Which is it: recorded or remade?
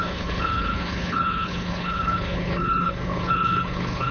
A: remade